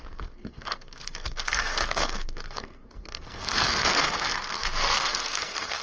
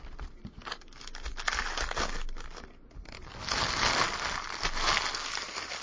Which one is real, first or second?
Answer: second